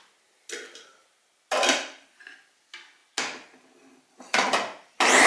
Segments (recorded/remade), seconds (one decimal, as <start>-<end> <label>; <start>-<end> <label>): 0.0-5.3 recorded